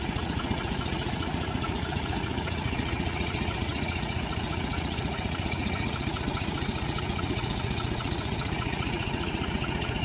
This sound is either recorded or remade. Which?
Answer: remade